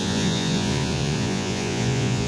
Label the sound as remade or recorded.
remade